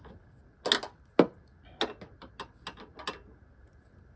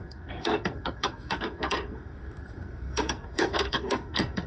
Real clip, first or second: first